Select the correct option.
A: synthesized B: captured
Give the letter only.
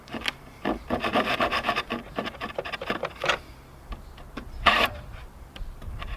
A